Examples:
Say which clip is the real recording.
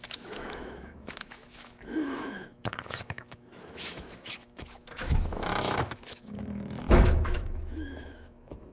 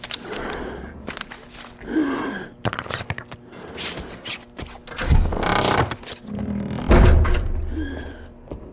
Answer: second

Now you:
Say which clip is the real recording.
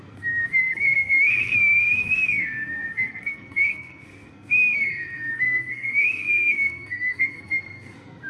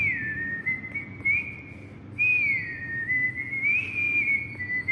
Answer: second